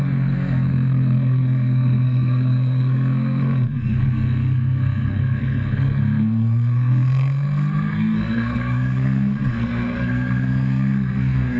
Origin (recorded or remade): remade